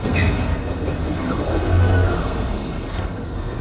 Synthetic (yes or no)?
yes